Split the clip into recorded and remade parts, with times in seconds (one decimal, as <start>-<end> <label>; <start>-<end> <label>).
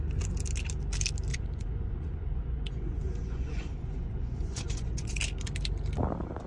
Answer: 0.0-1.3 recorded; 1.3-5.2 remade; 5.2-6.5 recorded